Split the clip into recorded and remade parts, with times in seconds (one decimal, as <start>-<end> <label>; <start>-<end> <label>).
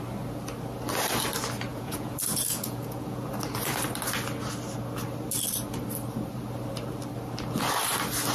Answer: 0.0-1.7 recorded; 1.7-3.3 remade; 3.3-8.3 recorded